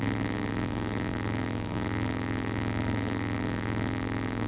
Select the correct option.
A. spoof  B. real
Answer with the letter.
A